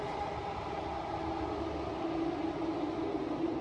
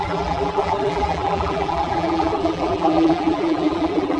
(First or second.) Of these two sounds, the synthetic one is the second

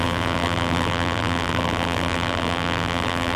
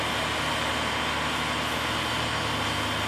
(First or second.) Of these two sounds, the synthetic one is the first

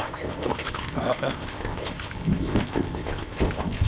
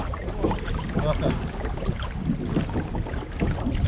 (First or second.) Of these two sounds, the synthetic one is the first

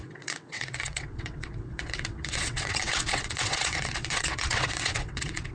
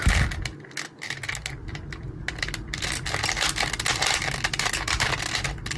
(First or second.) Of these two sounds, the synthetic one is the first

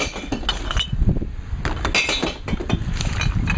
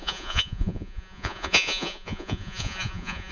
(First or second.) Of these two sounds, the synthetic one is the second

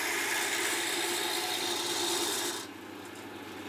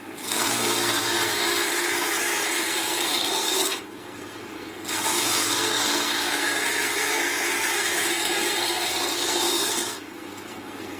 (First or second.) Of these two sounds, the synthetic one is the second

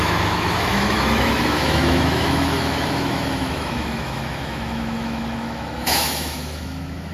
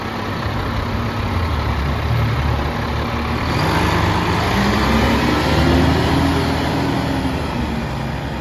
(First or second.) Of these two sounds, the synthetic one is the first